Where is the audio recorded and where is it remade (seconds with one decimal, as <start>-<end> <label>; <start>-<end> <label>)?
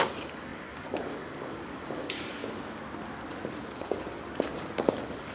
0.0-2.4 remade; 2.4-3.7 recorded; 3.7-5.3 remade